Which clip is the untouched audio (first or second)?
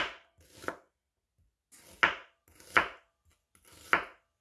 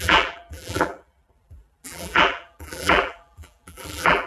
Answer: first